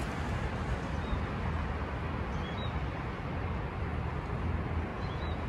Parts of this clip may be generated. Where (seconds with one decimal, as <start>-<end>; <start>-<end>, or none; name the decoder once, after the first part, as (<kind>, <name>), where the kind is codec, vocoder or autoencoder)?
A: 4.9-5.5 (vocoder, Vocos)